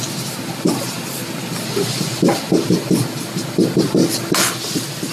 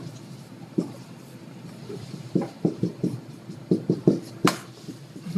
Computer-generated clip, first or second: second